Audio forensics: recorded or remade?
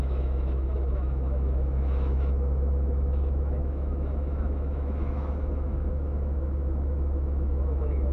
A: remade